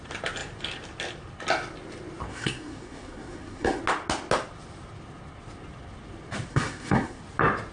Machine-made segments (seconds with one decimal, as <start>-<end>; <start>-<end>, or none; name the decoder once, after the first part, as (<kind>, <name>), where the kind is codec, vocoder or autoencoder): 2.3-3.8 (codec, SNAC); 6.5-7.2